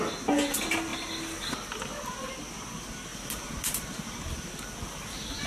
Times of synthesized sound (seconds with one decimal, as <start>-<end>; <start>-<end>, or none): 3.1-5.5